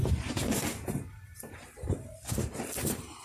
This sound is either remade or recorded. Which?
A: remade